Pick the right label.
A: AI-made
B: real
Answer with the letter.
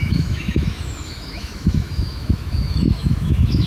A